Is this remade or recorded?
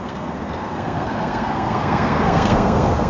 remade